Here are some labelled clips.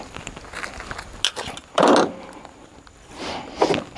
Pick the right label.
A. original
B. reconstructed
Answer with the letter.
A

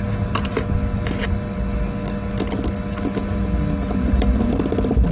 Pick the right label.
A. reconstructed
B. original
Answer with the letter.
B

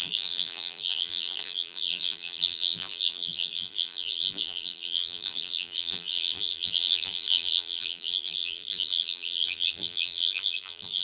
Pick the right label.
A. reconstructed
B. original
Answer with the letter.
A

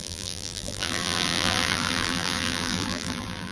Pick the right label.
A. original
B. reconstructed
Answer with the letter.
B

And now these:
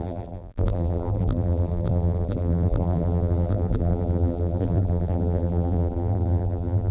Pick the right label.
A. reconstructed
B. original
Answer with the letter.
A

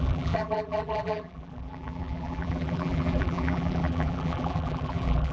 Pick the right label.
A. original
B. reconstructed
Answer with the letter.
B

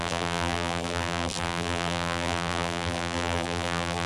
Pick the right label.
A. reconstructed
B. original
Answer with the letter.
A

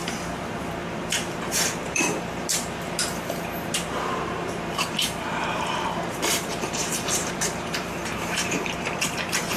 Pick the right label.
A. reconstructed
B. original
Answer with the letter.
A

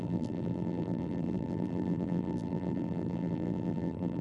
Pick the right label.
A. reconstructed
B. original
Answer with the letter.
A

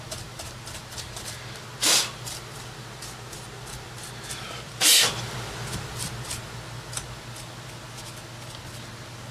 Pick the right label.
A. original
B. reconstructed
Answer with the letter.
A